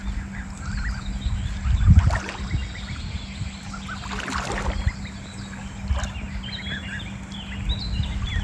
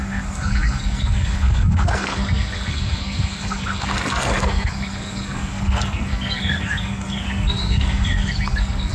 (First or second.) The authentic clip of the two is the first